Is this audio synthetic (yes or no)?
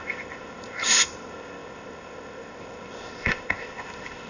yes